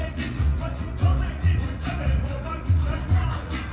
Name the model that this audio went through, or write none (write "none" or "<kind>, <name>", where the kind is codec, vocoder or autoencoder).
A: vocoder, Vocos